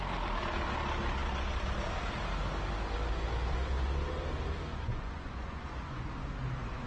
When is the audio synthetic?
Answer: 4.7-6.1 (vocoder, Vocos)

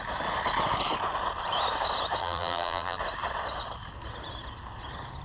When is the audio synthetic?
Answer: 2.2-3.0 (vocoder, BigVGAN v2)

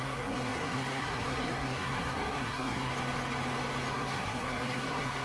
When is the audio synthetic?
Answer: 0.0-2.9 (codec, SNAC); 3.9-5.2

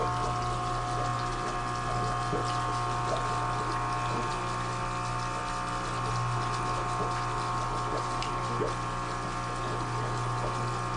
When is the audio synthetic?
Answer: none

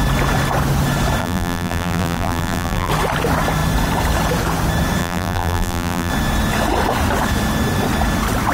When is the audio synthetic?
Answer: 1.2-2.9 (vocoder, BigVGAN v2); 5.0-6.1

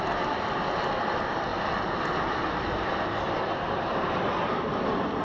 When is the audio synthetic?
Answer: none

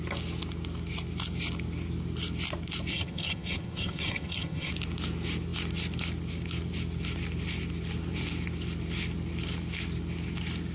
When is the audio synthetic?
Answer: 2.9-4.7 (vocoder, HiFi-GAN)

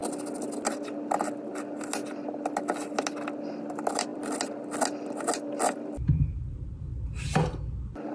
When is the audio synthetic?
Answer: 6.9-7.4 (vocoder, BigVGAN v2)